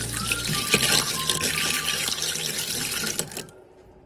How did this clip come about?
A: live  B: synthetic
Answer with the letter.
A